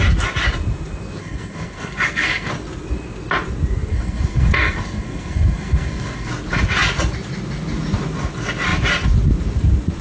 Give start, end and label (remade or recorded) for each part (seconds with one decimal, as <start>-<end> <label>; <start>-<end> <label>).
0.0-1.2 recorded; 1.2-2.5 remade; 2.5-3.9 recorded; 3.9-6.3 remade; 6.3-10.0 recorded

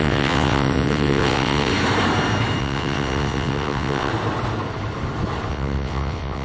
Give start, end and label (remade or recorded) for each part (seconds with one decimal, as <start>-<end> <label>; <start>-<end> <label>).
0.0-1.7 remade; 1.7-2.6 recorded; 2.6-4.1 remade; 4.1-5.5 recorded; 5.5-6.4 remade

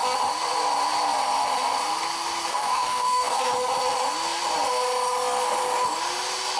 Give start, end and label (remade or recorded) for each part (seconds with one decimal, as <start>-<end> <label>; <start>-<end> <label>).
0.0-2.5 recorded; 2.5-3.4 remade; 3.4-6.6 recorded

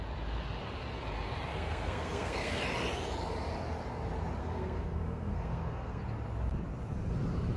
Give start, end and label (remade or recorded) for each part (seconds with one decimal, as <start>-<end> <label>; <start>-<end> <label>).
0.0-1.5 recorded; 1.5-2.6 remade; 2.6-4.4 recorded; 4.4-6.0 remade; 6.0-7.6 recorded

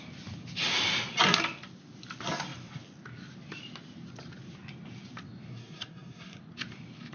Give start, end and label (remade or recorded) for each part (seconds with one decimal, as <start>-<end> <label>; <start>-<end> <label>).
0.0-5.5 recorded; 5.5-6.4 remade; 6.4-7.1 recorded